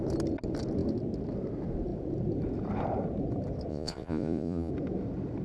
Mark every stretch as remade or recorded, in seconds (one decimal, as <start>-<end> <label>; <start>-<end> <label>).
0.0-3.7 recorded; 3.7-4.7 remade; 4.7-5.4 recorded